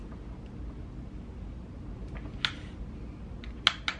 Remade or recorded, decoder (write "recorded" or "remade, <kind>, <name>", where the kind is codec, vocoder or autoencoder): recorded